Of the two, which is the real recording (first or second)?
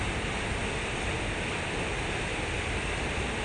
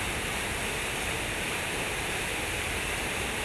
first